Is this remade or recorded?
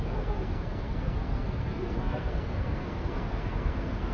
remade